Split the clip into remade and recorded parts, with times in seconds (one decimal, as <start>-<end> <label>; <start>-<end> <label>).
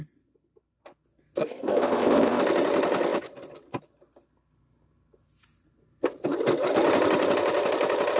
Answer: 0.0-1.4 recorded; 1.4-2.4 remade; 2.4-8.2 recorded